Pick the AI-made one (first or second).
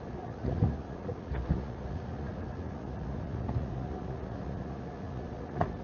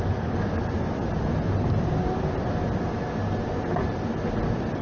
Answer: first